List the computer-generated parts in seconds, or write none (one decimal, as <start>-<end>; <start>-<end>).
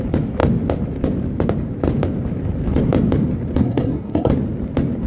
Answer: 3.6-4.3